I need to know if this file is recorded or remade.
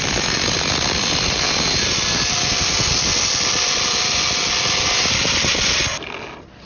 recorded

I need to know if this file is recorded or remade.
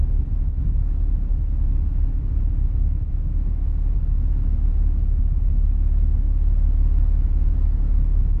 recorded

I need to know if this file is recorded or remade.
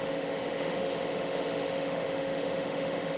remade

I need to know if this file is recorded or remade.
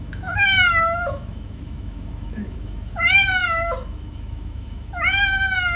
remade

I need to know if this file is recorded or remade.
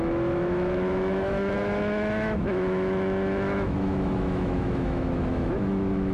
remade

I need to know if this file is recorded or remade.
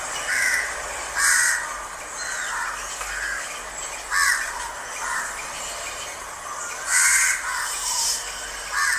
recorded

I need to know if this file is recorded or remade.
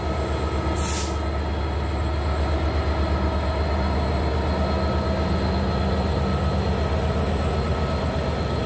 recorded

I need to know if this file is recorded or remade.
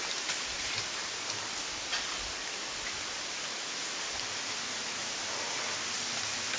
recorded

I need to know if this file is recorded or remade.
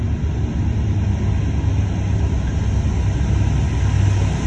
recorded